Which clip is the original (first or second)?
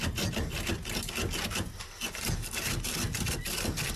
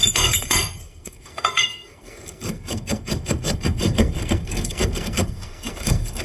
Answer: first